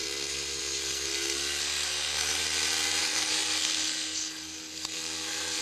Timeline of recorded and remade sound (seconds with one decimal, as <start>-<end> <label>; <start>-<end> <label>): 0.0-2.4 remade; 2.4-3.0 recorded; 3.0-5.6 remade